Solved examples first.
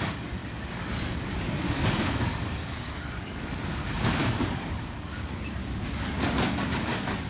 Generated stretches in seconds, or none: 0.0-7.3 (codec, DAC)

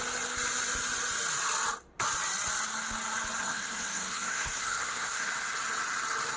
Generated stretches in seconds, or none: 3.4-5.3 (codec, SNAC)

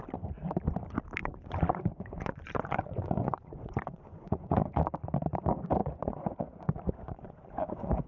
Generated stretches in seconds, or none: 1.2-4.8 (vocoder, Vocos); 5.8-8.1

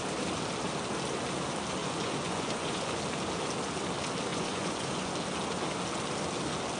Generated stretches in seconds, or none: 1.8-3.0 (vocoder, Vocos); 4.3-5.1

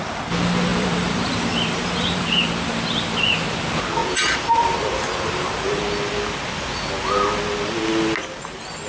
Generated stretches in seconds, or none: 0.7-2.5 (vocoder, BigVGAN v2); 4.0-5.8